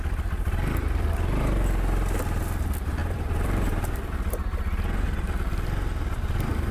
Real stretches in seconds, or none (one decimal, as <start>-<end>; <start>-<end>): 0.0-3.0; 4.1-6.7